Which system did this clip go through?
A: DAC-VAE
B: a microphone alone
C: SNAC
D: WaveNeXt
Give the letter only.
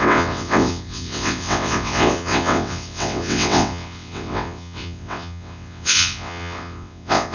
D